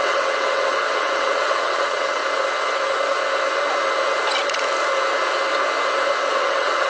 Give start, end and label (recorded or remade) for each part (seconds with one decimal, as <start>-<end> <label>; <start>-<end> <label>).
0.0-2.2 remade; 2.2-6.3 recorded; 6.3-6.9 remade